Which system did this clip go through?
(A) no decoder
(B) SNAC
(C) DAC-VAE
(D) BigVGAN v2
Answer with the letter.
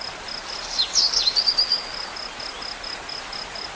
A